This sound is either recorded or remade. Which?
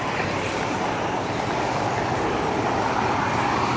recorded